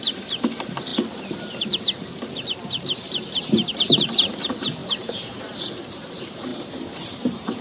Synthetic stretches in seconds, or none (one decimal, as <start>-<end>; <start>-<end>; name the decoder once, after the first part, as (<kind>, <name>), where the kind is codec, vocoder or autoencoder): 0.0-3.7 (vocoder, BigVGAN v2); 4.3-7.6